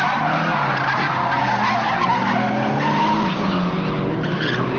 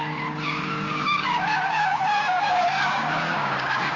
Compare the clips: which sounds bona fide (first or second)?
first